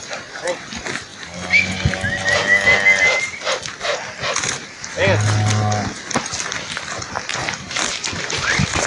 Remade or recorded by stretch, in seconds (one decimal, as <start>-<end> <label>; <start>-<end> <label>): 0.0-8.9 recorded